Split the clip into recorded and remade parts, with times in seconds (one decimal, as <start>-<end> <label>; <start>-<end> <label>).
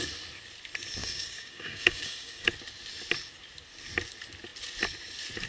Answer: 0.0-1.0 recorded; 1.0-2.5 remade; 2.5-5.5 recorded